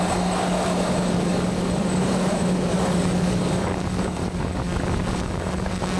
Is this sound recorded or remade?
remade